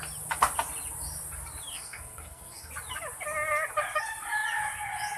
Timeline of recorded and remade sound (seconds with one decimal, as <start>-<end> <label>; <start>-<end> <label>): 0.0-1.7 recorded; 1.7-2.7 remade; 2.7-5.2 recorded